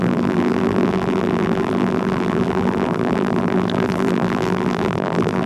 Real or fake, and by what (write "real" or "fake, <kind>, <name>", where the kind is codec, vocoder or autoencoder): fake, vocoder, BigVGAN v2